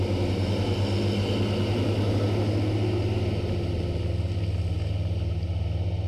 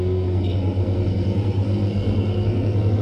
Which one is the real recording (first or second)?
first